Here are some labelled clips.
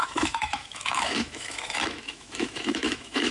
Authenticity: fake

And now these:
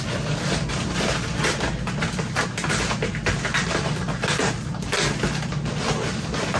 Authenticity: real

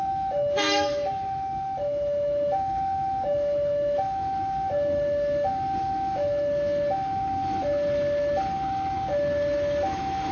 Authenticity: fake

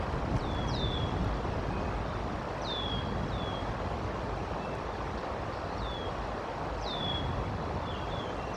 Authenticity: real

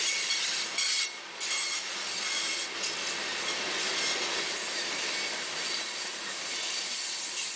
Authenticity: real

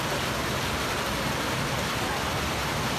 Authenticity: real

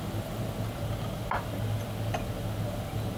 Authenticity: real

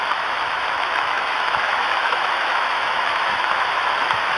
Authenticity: fake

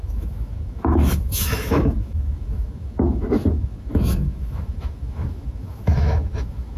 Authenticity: fake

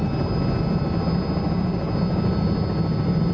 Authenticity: real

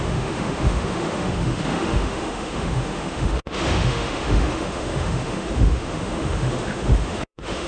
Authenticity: fake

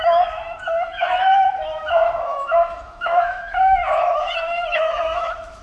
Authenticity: fake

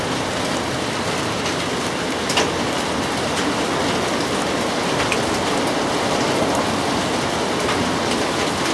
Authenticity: real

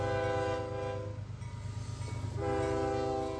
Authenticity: real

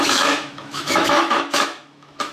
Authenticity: fake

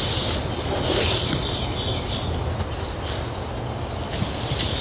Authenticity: real